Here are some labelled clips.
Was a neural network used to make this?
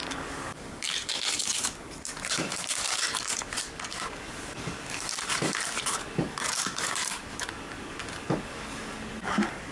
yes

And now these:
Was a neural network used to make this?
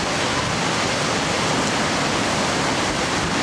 no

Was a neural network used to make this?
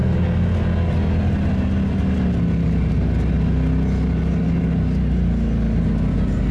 no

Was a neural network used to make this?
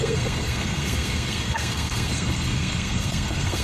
yes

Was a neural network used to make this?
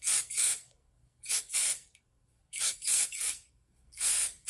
yes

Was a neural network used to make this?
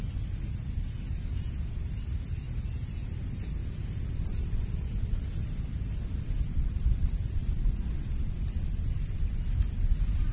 no